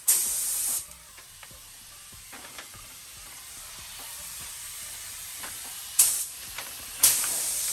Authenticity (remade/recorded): remade